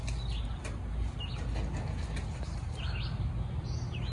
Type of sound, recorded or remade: recorded